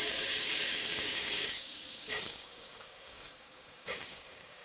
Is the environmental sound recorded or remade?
remade